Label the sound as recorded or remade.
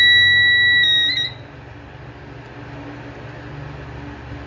recorded